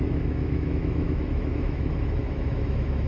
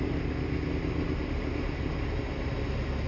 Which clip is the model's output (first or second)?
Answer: first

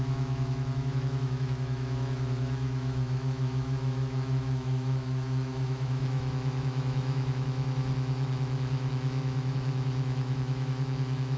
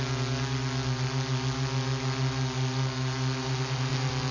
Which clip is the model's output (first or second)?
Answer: first